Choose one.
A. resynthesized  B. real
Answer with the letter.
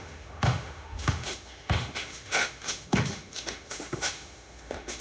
A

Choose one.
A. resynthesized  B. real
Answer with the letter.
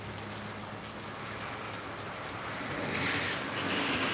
B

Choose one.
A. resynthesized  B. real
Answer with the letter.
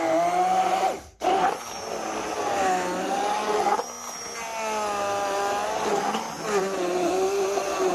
B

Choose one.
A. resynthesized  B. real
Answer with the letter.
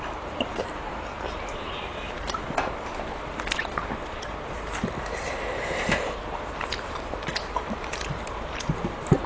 A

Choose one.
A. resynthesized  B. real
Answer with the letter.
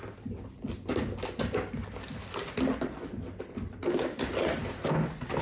B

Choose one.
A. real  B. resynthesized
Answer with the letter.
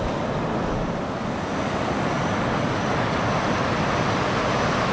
A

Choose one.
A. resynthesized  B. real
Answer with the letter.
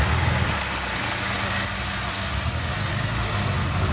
B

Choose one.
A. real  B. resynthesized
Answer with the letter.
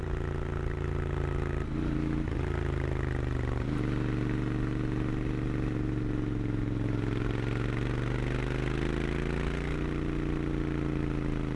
A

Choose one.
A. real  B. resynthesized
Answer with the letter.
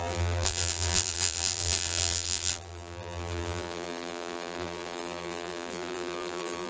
B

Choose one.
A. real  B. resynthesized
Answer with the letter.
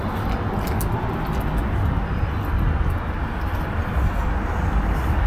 A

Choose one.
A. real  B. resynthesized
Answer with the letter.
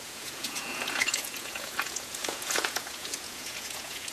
B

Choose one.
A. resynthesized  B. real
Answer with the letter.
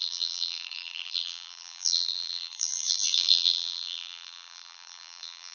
A